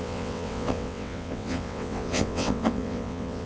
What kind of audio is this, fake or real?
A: fake